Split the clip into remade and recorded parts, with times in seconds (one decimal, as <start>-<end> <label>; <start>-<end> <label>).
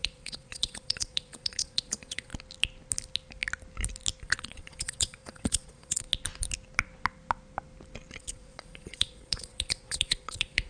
0.0-2.3 remade; 2.3-4.2 recorded; 4.2-6.1 remade; 6.1-8.2 recorded; 8.2-10.7 remade